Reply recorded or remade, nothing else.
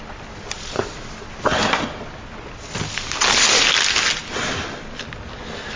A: recorded